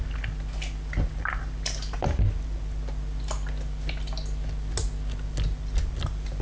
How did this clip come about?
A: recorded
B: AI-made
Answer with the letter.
A